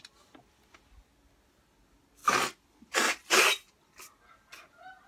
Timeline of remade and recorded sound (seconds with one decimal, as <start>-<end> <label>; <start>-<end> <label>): 0.0-2.2 recorded; 2.2-3.0 remade; 3.0-5.1 recorded